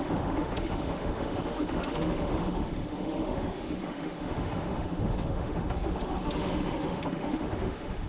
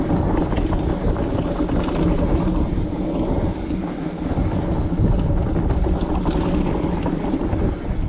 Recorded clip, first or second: second